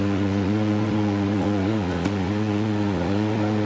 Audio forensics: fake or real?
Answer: fake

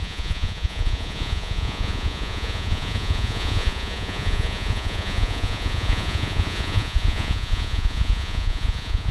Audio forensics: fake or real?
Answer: fake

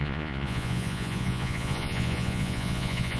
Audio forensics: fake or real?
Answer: fake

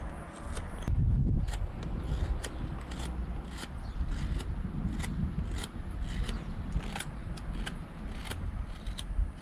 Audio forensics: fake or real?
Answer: real